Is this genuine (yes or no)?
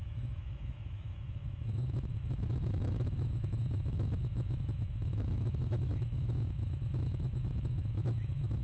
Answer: no